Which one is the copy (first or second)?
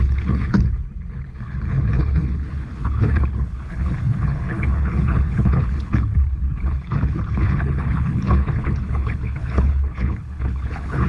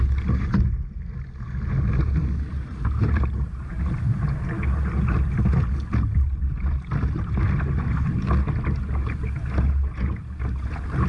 first